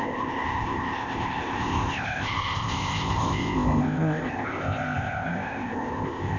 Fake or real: fake